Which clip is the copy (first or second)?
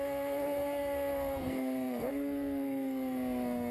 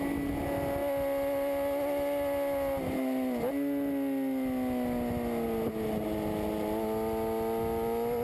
first